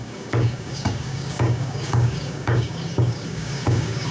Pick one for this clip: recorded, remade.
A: remade